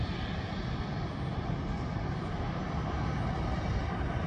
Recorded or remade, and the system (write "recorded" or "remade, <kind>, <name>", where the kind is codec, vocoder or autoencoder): recorded